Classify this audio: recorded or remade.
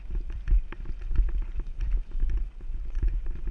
recorded